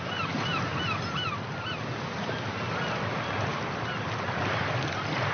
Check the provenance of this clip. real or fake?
real